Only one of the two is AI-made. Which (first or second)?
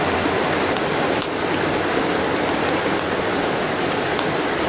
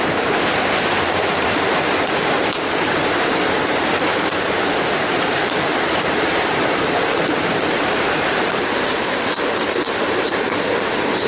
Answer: second